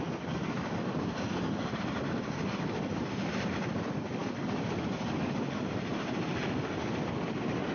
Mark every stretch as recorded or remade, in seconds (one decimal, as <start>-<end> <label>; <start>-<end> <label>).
0.0-7.7 recorded